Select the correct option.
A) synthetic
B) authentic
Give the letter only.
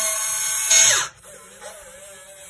B